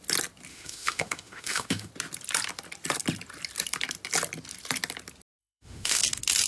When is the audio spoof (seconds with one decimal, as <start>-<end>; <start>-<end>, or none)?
0.5-1.9; 5.4-6.0